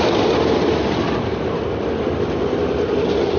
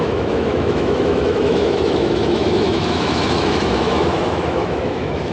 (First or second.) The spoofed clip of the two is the second